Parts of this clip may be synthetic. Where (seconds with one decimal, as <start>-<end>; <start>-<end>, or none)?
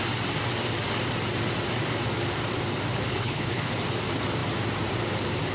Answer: 3.1-3.7